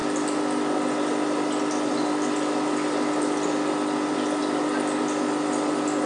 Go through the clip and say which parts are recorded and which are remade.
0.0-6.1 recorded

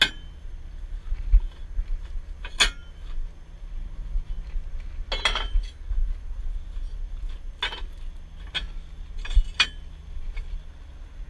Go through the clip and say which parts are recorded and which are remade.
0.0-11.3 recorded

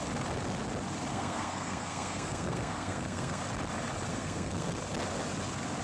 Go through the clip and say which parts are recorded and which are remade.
0.0-1.1 recorded; 1.1-3.4 remade; 3.4-4.1 recorded; 4.1-4.8 remade; 4.8-5.8 recorded

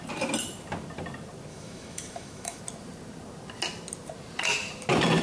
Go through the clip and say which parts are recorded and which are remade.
0.0-1.5 recorded; 1.5-2.6 remade; 2.6-5.2 recorded

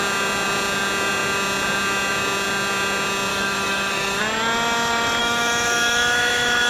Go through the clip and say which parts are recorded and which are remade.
0.0-3.3 recorded; 3.3-4.2 remade; 4.2-5.2 recorded; 5.2-6.7 remade

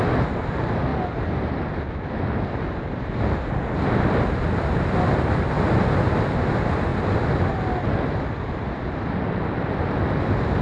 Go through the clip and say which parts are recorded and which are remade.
0.0-10.6 recorded

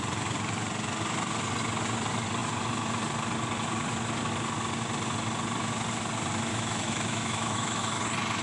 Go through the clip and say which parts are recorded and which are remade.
0.0-6.5 recorded; 6.5-8.0 remade; 8.0-8.4 recorded